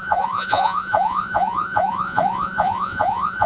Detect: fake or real fake